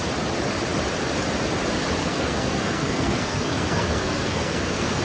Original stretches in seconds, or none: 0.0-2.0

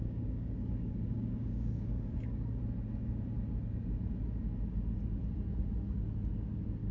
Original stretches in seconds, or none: 2.6-6.9

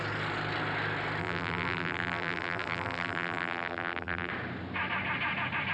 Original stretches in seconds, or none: 0.0-1.2; 4.3-5.7

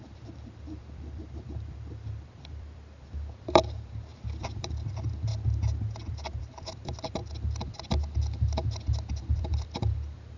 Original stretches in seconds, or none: 4.1-4.6; 5.3-6.1; 7.2-9.2

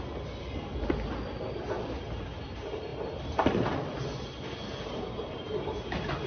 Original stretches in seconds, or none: 0.0-6.3

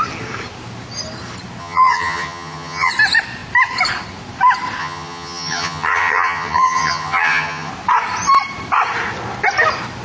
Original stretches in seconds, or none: 0.0-1.6; 2.9-4.8; 7.7-10.0

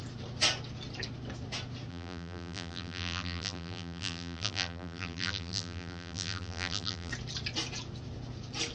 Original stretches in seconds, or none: 0.0-1.9; 7.1-8.7